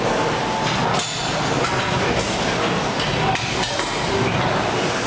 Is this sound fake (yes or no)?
no